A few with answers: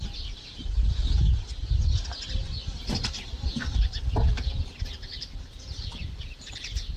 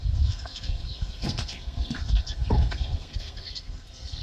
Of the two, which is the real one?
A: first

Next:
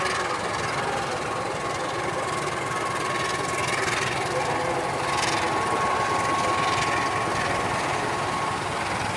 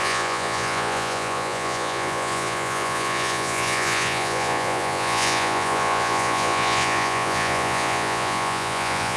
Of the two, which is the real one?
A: first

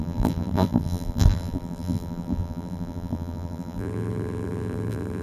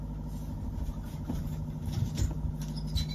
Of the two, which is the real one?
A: second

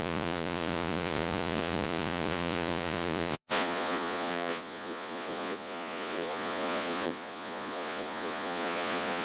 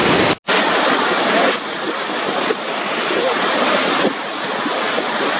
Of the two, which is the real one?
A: second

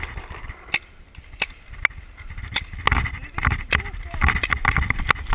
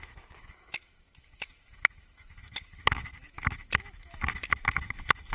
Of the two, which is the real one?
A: first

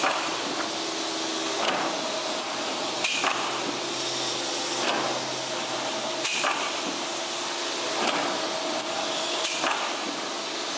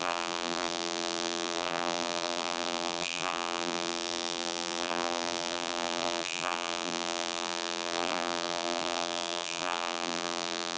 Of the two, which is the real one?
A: first